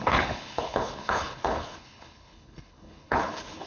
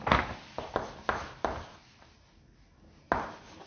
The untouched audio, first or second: second